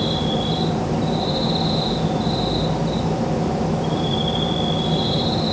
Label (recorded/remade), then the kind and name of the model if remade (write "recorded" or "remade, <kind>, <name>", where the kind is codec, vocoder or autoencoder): recorded